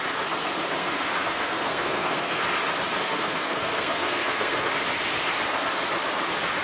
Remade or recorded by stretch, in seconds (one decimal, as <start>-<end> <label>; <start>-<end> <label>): 0.0-0.8 recorded; 0.8-2.4 remade; 2.4-3.0 recorded; 3.0-4.7 remade; 4.7-6.6 recorded